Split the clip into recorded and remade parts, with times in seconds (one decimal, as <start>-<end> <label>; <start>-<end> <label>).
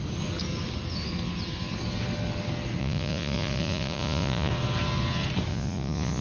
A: 0.0-2.8 recorded; 2.8-4.5 remade; 4.5-5.5 recorded; 5.5-6.2 remade